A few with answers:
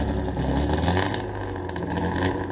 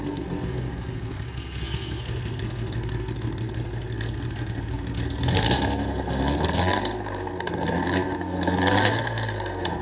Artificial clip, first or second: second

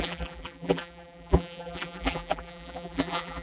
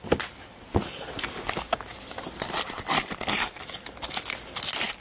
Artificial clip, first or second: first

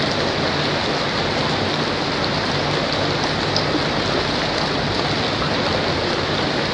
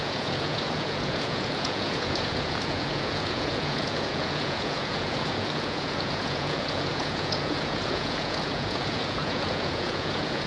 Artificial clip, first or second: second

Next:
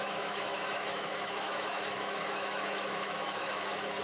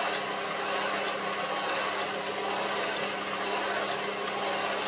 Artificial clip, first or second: first